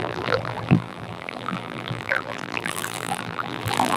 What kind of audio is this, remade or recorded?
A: remade